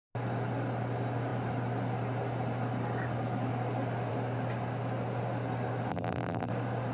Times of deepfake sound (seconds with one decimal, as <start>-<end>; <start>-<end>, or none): 5.9-6.5